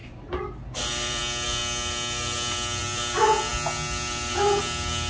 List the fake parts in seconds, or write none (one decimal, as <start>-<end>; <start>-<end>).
0.0-1.2